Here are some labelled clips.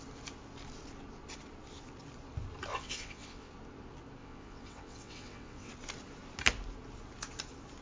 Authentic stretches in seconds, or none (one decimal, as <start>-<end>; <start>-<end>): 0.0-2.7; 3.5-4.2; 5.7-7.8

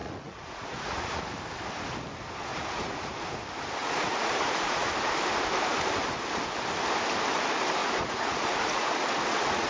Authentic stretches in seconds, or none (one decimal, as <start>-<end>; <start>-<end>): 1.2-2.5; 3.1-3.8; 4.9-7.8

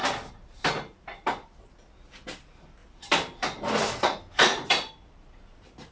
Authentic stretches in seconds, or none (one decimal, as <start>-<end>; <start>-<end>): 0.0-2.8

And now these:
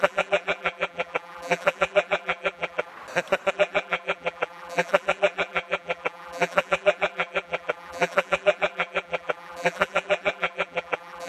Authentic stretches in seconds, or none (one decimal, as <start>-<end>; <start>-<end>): 2.9-3.5

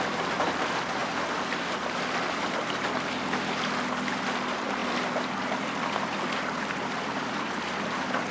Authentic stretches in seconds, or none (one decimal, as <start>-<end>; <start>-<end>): 1.0-4.1

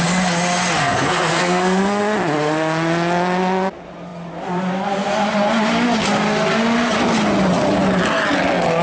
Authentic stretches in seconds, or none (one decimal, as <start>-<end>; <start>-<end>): 0.0-0.8; 2.0-8.8

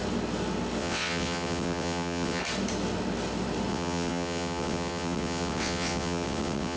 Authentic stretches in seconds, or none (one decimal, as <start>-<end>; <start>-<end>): 0.0-0.8; 2.4-3.7

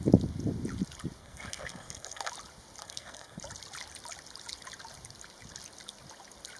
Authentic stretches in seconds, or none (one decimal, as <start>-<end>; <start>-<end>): 0.0-1.2; 2.3-2.8; 3.4-6.6